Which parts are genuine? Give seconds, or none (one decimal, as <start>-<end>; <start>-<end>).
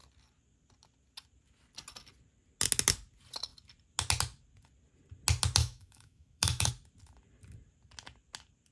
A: 0.0-5.6; 6.7-8.7